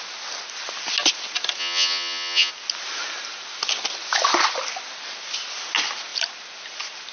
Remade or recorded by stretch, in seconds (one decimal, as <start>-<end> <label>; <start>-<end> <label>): 0.0-1.6 recorded; 1.6-2.5 remade; 2.5-7.1 recorded